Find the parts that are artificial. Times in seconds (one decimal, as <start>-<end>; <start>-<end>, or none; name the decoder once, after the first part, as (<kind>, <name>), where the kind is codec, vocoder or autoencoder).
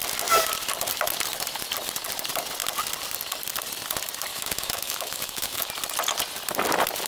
4.3-5.7 (autoencoder, DAC-VAE)